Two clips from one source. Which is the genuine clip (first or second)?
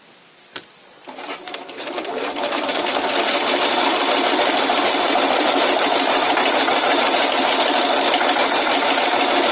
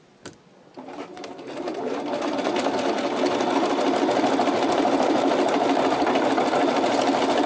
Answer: second